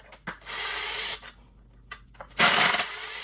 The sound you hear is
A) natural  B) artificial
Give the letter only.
A